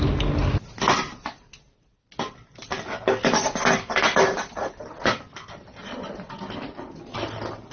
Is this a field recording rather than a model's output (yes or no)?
yes